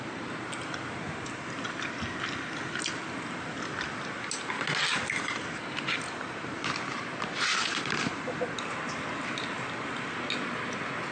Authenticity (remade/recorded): recorded